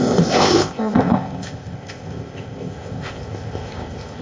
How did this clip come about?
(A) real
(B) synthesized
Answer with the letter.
B